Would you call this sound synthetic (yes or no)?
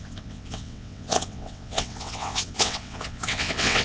yes